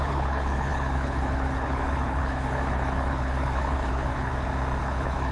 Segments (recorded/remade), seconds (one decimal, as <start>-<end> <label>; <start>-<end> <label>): 0.0-4.3 remade; 4.3-4.8 recorded; 4.8-5.3 remade